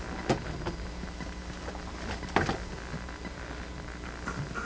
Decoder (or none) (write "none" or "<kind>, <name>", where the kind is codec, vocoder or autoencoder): none